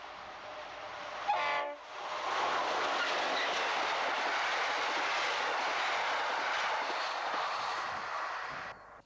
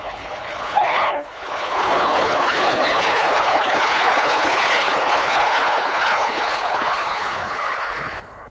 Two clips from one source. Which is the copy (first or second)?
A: second